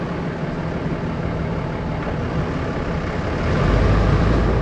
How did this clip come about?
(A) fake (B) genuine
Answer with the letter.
B